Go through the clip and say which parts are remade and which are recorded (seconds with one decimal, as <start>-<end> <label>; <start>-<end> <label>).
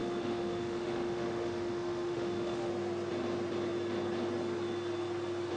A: 0.0-2.7 remade; 2.7-5.6 recorded